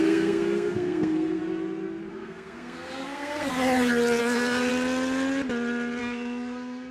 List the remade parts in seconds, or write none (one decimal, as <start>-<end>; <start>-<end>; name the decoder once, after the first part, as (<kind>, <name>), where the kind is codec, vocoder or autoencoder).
0.0-1.4 (codec, SNAC); 2.1-3.5; 4.2-4.7; 6.0-6.9